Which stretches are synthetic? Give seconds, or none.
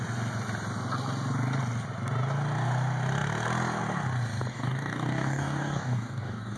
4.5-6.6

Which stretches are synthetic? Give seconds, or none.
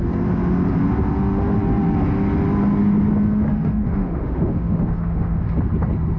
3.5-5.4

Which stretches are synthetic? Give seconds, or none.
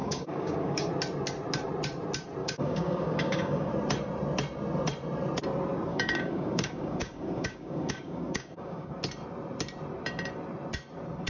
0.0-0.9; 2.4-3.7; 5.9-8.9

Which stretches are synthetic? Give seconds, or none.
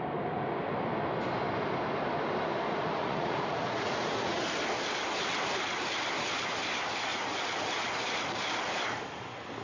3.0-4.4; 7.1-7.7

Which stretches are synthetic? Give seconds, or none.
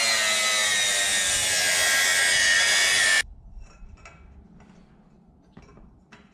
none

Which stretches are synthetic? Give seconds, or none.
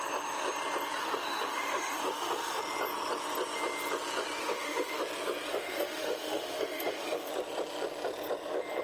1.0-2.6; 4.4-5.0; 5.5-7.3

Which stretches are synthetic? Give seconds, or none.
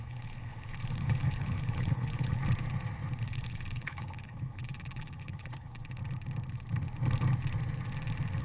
0.0-2.4; 3.2-6.0